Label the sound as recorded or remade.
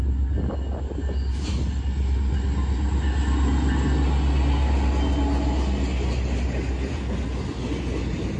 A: recorded